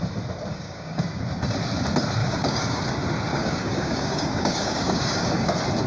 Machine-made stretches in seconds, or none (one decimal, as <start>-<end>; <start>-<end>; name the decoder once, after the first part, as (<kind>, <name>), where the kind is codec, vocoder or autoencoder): 0.5-1.0 (codec, DAC); 2.2-2.8; 3.3-5.5